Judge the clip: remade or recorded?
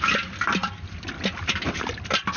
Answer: recorded